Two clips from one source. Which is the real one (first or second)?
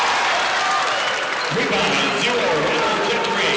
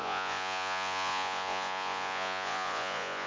first